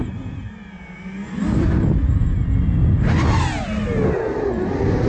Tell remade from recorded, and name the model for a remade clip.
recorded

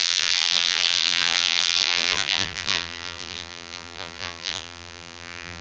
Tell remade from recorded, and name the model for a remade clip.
remade, vocoder, BigVGAN v2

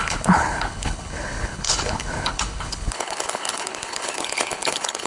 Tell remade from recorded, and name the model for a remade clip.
remade, codec, HILCodec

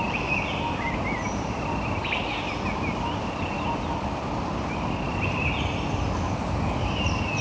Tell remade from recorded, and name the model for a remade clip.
recorded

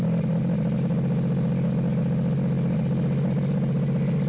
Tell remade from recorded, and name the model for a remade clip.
recorded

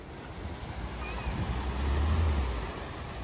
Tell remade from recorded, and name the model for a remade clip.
recorded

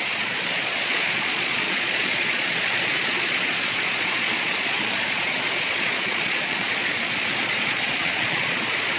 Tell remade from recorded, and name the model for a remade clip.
remade, vocoder, Vocos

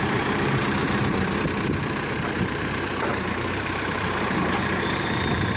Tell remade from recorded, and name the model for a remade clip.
remade, vocoder, BigVGAN v2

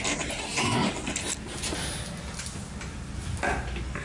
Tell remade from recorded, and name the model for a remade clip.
recorded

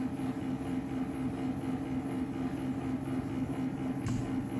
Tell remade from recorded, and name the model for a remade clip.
recorded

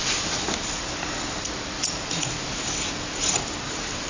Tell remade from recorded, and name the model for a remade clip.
remade, vocoder, BigVGAN v2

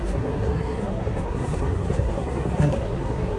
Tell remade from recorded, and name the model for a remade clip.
remade, codec, SNAC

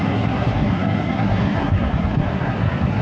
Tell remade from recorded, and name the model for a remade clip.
remade, codec, SNAC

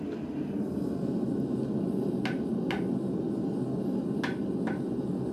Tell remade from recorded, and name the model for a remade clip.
recorded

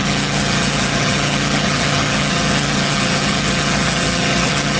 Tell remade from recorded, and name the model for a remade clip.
remade, vocoder, HiFi-GAN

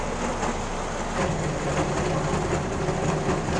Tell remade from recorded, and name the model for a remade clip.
recorded